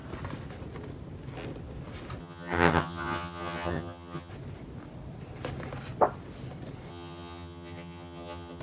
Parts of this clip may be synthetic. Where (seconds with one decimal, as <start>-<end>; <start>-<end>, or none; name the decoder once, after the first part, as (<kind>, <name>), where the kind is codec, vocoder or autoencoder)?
2.2-4.3 (vocoder, HiFi-GAN); 6.9-8.6

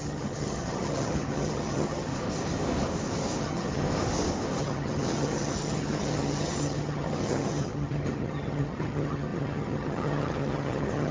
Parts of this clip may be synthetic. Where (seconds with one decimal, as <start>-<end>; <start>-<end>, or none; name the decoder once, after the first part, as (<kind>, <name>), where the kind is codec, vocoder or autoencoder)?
0.0-2.1 (vocoder, HiFi-GAN); 3.4-3.8; 4.6-11.1

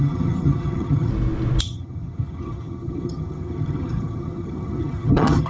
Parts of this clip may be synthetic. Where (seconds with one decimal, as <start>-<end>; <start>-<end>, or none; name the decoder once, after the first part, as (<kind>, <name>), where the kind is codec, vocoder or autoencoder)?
0.0-1.1 (vocoder, HiFi-GAN); 1.6-5.5

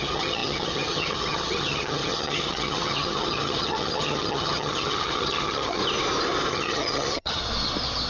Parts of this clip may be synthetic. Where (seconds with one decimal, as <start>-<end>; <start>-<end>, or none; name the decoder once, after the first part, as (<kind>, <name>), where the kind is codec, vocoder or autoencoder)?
0.0-5.8 (vocoder, HiFi-GAN); 6.5-7.4